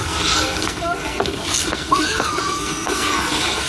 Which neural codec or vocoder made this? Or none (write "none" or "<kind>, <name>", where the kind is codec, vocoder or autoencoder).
codec, SNAC